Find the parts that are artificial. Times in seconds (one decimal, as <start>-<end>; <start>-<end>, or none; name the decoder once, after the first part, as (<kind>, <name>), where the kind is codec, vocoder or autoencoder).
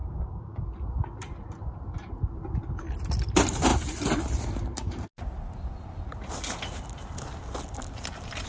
0.0-0.6 (codec, DAC)